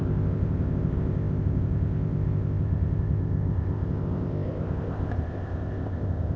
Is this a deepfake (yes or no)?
yes